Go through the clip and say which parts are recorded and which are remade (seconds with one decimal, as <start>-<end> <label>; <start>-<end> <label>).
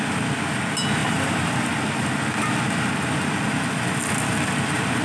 0.0-1.0 recorded; 1.0-1.5 remade; 1.5-5.0 recorded